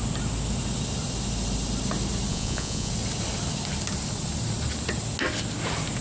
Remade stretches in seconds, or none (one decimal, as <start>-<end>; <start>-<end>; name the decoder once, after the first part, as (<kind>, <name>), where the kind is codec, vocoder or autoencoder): 2.3-2.9 (vocoder, Vocos)